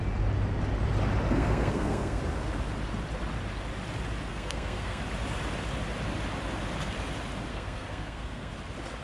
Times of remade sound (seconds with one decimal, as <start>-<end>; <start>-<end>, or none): 1.3-2.2; 4.3-5.0; 7.5-8.5